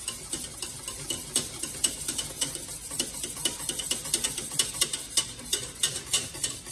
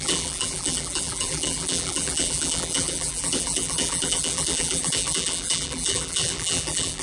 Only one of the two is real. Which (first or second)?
first